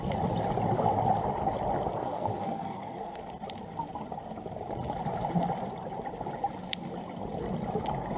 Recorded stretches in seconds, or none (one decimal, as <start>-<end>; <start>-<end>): 0.0-2.0; 3.2-8.2